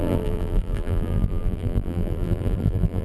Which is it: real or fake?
fake